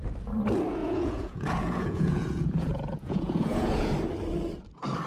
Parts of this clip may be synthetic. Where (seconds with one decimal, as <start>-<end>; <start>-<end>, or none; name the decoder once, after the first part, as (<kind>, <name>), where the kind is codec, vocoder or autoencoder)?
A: 0.8-3.9 (vocoder, Vocos)

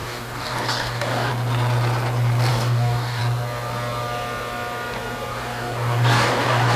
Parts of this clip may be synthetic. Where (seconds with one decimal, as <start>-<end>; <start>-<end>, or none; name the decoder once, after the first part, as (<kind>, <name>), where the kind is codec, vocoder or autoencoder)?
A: 0.0-1.3 (codec, DAC); 2.5-3.2; 5.3-6.8

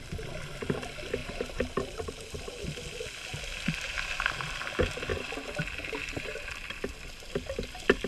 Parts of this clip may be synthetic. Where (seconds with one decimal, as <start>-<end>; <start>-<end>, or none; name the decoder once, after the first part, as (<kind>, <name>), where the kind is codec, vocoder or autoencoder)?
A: 1.2-2.5 (vocoder, BigVGAN v2); 5.1-8.1